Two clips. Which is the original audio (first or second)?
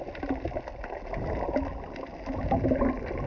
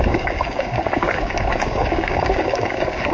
first